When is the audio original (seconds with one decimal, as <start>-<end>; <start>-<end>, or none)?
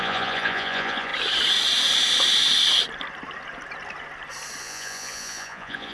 1.1-4.6